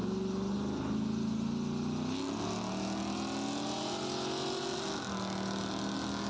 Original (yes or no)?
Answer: yes